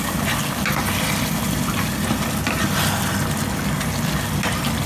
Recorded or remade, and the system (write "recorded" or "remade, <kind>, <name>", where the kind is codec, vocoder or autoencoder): recorded